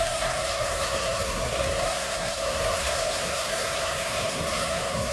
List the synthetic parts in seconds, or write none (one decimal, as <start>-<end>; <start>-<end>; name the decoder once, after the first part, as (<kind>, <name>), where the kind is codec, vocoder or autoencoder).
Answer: 0.0-5.1 (codec, SNAC)